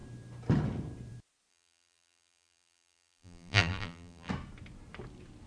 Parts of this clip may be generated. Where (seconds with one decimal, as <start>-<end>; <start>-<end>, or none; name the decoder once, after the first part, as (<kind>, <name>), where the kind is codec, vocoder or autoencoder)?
1.5-4.3 (vocoder, BigVGAN v2)